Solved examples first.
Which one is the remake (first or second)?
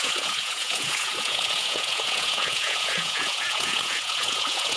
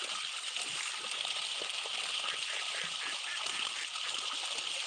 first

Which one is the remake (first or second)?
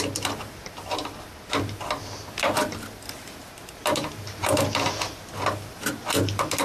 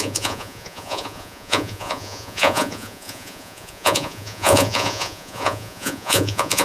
second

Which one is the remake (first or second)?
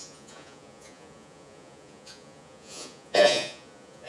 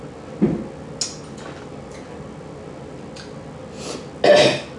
first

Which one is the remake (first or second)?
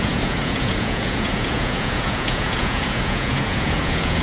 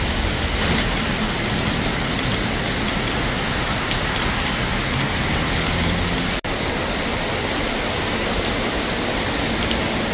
first